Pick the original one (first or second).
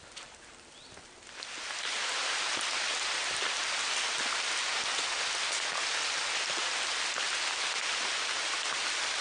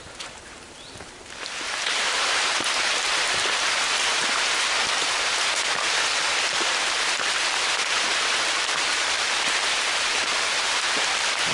first